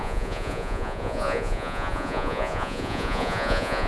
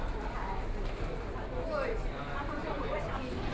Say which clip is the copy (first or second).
first